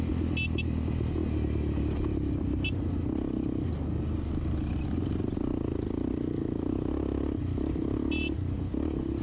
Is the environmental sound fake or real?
real